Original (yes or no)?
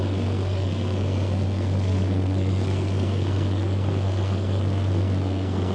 no